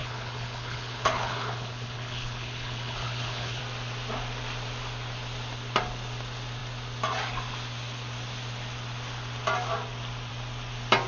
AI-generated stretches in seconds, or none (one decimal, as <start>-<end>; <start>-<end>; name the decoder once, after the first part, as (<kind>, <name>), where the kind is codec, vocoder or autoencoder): 0.0-3.6 (codec, HILCodec)